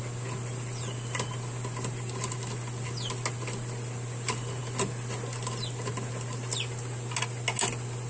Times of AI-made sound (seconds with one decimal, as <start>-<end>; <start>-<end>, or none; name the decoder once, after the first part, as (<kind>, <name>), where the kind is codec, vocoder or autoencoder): none